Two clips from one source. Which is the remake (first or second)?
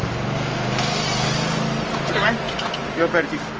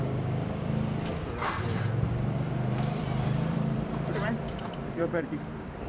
second